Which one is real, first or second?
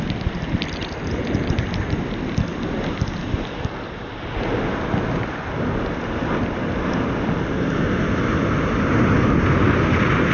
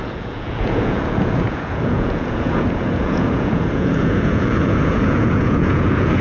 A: first